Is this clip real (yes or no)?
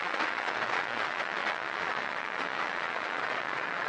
no